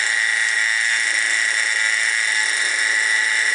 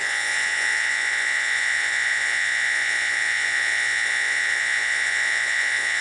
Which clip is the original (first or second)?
first